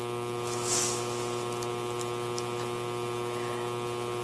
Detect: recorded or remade recorded